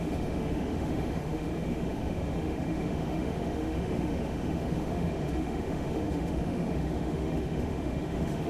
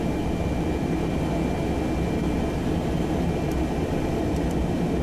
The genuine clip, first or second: second